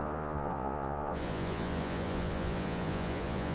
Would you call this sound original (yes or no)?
no